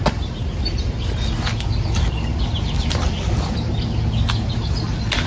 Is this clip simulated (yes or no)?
no